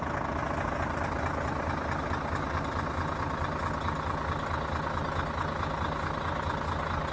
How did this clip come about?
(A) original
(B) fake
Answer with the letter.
A